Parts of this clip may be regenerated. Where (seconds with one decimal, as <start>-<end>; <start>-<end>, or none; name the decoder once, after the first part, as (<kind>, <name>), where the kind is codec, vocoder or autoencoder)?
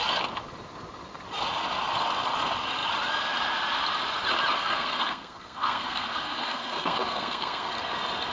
4.6-7.7 (codec, SNAC)